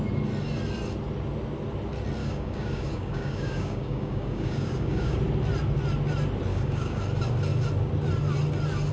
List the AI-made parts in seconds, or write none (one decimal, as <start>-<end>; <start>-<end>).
2.2-5.2; 6.5-7.0